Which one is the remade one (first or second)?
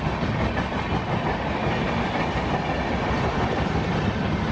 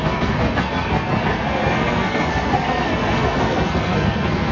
second